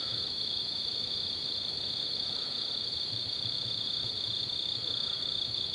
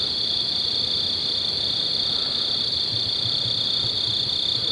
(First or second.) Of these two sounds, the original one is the second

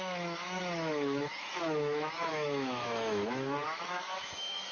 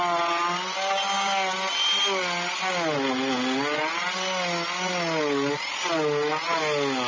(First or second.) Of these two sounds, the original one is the second